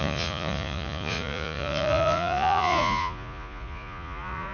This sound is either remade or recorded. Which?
remade